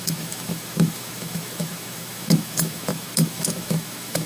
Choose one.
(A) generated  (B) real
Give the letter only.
A